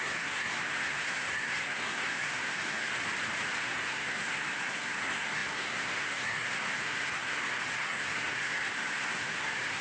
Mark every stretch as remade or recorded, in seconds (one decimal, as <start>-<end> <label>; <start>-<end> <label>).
0.0-2.9 remade; 2.9-3.6 recorded; 3.6-9.8 remade